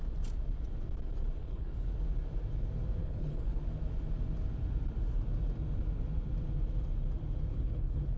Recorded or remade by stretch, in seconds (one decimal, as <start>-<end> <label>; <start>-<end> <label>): 0.0-1.4 recorded; 1.4-1.9 remade; 1.9-3.0 recorded; 3.0-3.6 remade; 3.6-7.5 recorded; 7.5-8.2 remade